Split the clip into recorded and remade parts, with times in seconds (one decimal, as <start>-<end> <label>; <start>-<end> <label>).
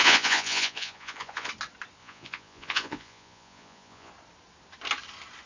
0.0-1.5 remade; 1.5-2.0 recorded; 2.0-4.1 remade; 4.1-5.5 recorded